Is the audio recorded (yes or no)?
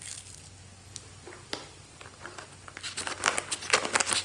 yes